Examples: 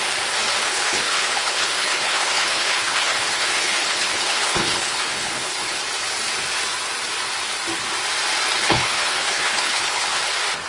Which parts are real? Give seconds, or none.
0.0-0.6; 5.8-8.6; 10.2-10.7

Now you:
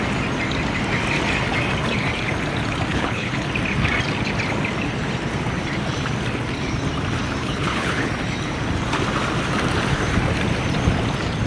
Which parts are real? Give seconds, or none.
0.0-2.9; 3.5-7.4; 8.1-11.5

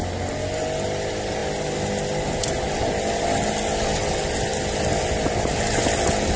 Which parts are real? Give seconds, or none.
0.0-6.4

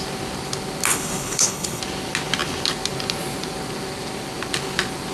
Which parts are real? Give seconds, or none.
0.0-0.9; 1.8-5.1